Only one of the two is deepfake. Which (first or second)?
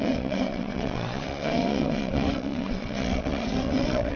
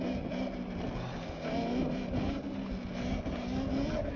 first